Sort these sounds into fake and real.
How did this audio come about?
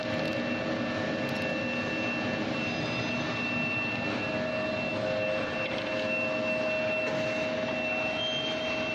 real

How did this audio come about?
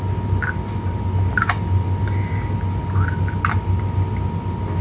real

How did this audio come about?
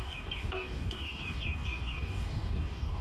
fake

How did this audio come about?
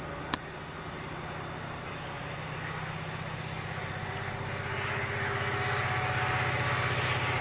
real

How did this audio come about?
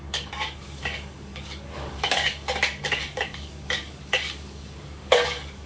fake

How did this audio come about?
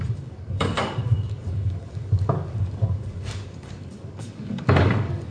fake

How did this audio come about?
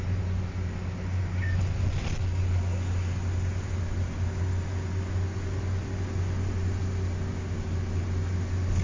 real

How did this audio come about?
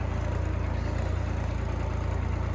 real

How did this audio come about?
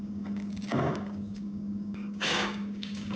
fake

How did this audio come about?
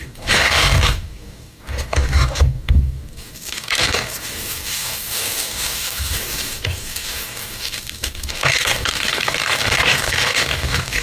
fake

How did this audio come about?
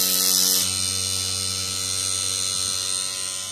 real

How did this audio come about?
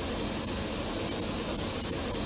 real